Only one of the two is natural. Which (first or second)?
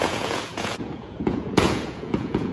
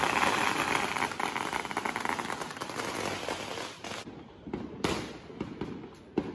second